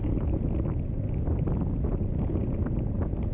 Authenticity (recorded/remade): recorded